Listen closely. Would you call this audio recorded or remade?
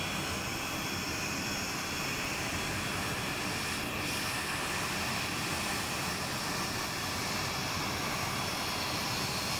recorded